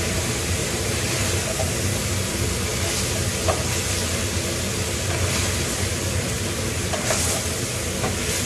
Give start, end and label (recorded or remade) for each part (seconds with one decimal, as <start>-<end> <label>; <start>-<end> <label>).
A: 0.0-0.6 recorded; 0.6-2.1 remade; 2.1-8.5 recorded

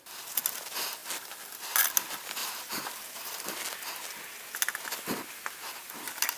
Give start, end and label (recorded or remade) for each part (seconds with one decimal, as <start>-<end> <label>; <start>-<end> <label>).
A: 0.0-2.4 recorded; 2.4-3.4 remade; 3.4-6.4 recorded